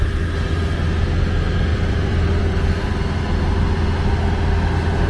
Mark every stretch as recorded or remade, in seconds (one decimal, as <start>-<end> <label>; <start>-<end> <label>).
0.0-1.7 recorded; 1.7-2.4 remade; 2.4-5.1 recorded